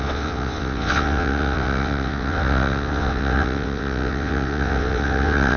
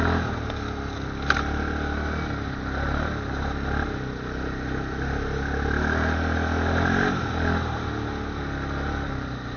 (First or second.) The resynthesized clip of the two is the first